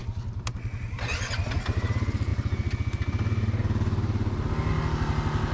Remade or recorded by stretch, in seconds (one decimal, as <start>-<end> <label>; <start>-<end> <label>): 0.0-5.5 recorded